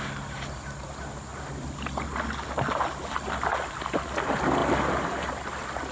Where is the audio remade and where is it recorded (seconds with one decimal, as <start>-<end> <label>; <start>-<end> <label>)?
0.0-5.9 recorded